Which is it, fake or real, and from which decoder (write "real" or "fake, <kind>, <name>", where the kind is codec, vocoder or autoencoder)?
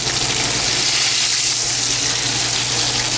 real